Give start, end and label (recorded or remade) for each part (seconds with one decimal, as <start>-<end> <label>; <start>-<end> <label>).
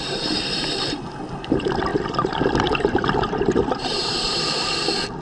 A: 0.0-5.2 remade